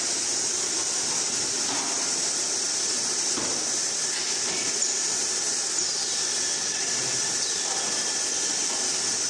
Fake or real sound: real